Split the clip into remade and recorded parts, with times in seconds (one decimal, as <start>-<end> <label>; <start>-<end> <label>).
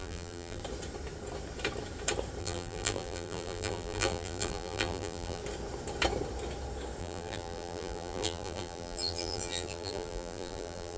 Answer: 0.0-0.6 remade; 0.6-2.4 recorded; 2.4-5.4 remade; 5.4-7.0 recorded; 7.0-11.0 remade